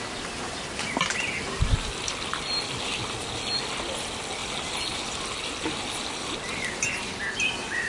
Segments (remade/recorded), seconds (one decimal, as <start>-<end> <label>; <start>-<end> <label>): 0.0-7.9 recorded